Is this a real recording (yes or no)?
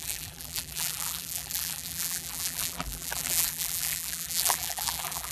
no